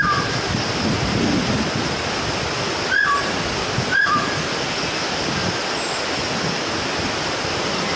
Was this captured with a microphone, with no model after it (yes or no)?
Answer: yes